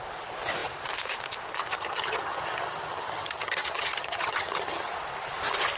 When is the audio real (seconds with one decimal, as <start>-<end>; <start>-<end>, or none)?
0.0-1.7; 4.9-5.8